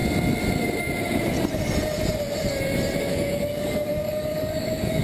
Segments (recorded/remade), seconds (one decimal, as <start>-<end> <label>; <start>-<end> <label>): 0.0-3.0 recorded; 3.0-5.0 remade